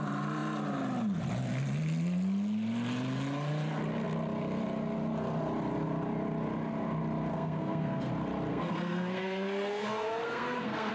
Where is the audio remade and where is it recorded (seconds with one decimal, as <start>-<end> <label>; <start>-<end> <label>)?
0.0-7.3 recorded; 7.3-8.1 remade; 8.1-8.5 recorded; 8.5-10.9 remade